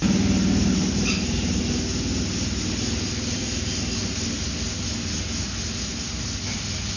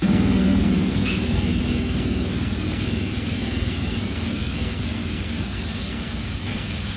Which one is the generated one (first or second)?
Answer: second